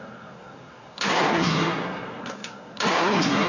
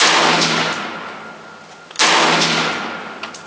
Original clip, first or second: second